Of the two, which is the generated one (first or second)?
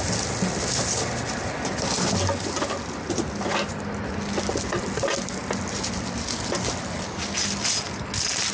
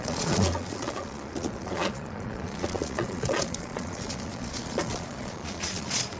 second